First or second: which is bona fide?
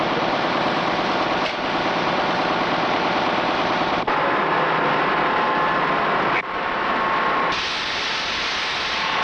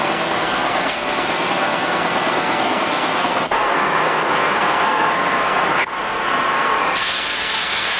first